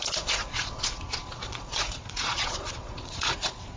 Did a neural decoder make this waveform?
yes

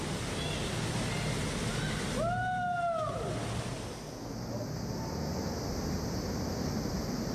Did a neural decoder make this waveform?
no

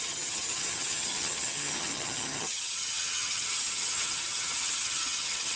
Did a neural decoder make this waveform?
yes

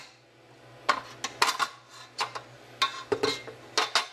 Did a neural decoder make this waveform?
no